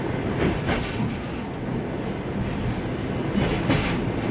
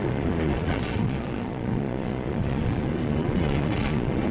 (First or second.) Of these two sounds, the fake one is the second